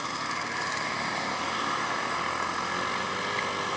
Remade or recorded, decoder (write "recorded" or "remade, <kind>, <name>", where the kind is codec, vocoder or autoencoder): recorded